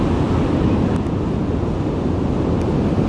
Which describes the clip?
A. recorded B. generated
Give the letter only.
A